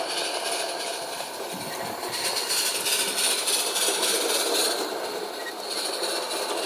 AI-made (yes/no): no